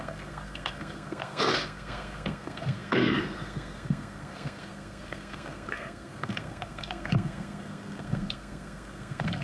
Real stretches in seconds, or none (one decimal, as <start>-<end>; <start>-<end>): none